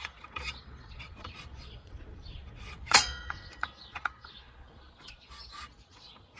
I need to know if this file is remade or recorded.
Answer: remade